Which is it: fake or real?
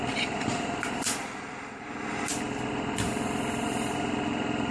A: real